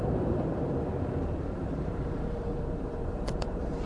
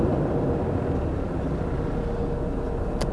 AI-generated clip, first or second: first